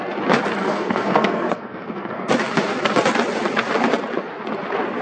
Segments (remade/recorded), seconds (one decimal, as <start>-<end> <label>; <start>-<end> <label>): 0.0-0.6 recorded; 0.6-2.3 remade; 2.3-5.0 recorded